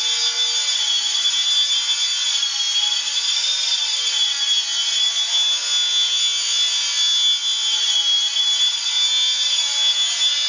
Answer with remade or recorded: recorded